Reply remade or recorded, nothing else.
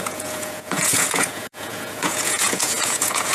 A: remade